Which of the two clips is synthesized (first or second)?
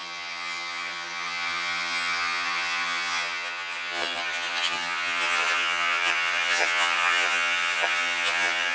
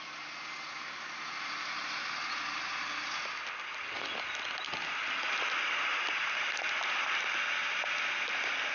first